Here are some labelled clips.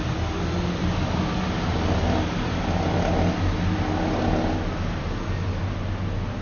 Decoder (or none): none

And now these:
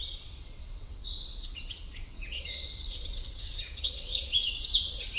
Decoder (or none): vocoder, WaveNeXt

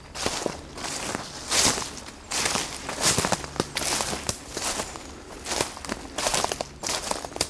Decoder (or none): none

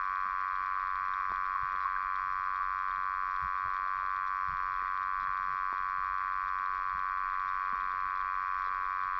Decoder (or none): none